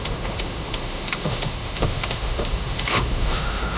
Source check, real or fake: fake